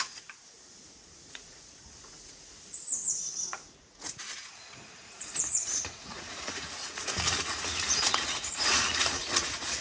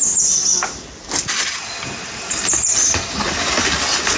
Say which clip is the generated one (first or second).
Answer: first